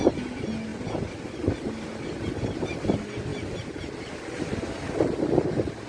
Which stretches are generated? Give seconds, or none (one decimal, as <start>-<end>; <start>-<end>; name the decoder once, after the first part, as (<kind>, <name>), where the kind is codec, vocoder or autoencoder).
none